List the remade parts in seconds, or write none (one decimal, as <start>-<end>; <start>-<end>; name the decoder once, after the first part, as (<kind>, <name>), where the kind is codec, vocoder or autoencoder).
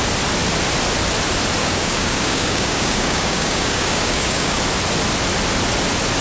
1.6-4.6 (codec, DAC)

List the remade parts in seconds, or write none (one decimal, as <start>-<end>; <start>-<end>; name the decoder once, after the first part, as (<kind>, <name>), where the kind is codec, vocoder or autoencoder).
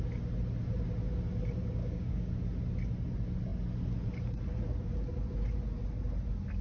1.8-2.3 (codec, DAC)